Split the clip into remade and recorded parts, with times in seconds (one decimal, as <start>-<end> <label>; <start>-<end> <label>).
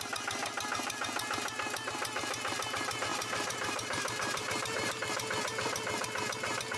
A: 0.0-3.1 recorded; 3.1-4.9 remade; 4.9-6.8 recorded